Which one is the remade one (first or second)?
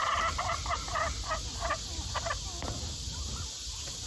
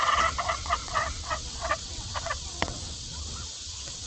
second